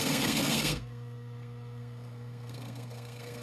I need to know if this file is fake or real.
fake